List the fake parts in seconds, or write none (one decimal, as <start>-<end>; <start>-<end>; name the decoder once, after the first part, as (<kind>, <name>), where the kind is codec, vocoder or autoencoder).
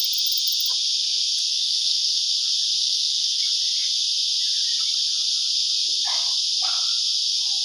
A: 1.5-2.2 (codec, SNAC); 2.8-3.4